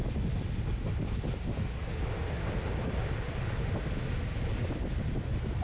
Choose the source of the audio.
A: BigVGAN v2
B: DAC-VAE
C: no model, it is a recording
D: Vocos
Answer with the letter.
C